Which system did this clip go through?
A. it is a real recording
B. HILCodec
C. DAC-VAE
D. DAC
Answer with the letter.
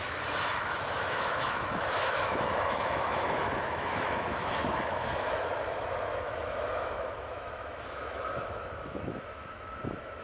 C